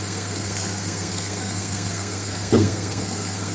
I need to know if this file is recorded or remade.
remade